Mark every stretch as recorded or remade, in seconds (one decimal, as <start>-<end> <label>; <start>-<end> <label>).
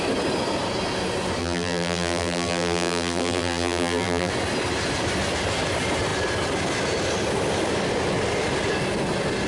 0.0-1.4 recorded; 1.4-4.3 remade; 4.3-9.5 recorded